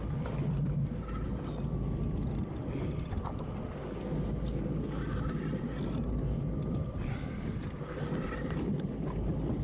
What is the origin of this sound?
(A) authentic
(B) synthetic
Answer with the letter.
A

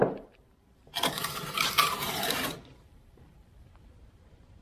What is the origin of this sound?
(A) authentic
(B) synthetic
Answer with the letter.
B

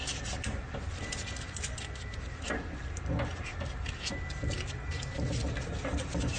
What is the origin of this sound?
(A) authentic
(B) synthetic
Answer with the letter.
B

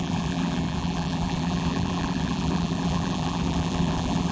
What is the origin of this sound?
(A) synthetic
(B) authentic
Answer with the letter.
A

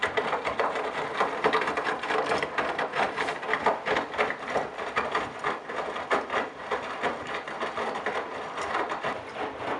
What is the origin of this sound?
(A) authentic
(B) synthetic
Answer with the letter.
A